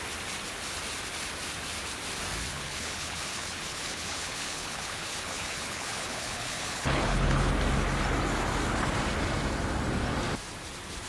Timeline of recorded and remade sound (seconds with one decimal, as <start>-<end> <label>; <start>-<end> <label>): 0.0-2.5 recorded; 2.5-7.5 remade; 7.5-11.1 recorded